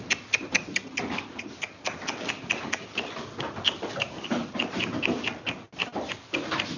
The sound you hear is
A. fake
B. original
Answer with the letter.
B